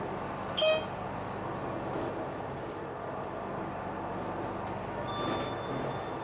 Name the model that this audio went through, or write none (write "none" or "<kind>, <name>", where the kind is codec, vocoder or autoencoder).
none